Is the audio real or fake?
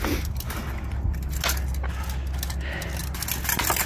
real